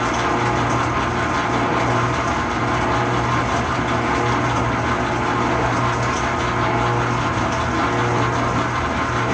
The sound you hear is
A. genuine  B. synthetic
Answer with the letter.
A